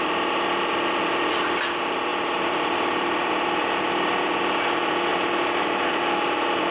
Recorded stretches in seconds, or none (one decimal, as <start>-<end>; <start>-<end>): 0.0-6.7